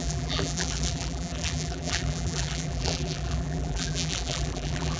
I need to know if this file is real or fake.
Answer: fake